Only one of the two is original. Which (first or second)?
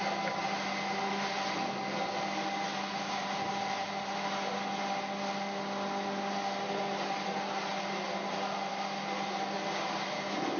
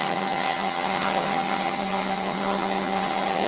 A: first